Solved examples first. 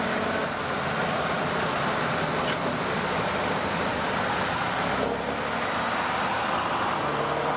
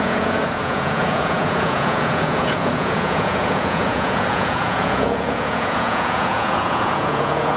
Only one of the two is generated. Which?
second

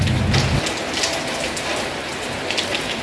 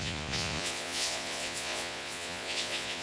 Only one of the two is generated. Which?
second